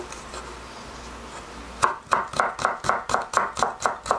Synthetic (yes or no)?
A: no